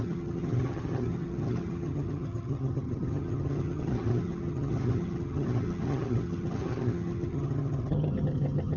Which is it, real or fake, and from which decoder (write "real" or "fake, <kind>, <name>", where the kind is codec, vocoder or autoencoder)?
fake, vocoder, HiFi-GAN